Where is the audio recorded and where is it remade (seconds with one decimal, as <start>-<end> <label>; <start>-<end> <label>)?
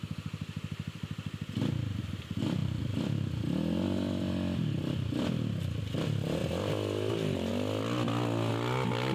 0.0-2.6 recorded; 2.6-3.5 remade; 3.5-9.1 recorded